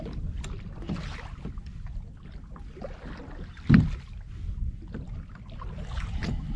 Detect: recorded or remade recorded